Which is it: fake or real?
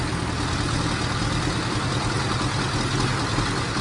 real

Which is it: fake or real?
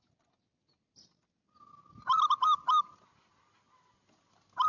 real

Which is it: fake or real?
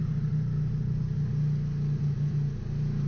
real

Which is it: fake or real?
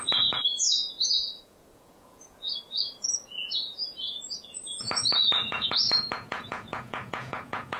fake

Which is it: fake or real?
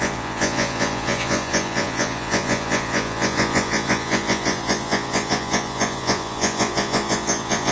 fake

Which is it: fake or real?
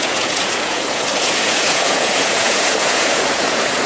fake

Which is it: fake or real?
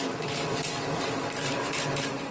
real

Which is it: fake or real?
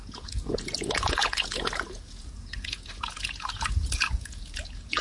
fake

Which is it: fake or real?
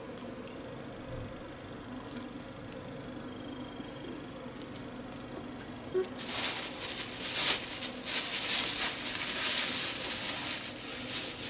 real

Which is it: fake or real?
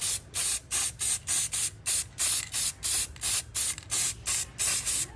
real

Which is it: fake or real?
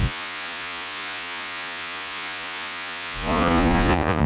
fake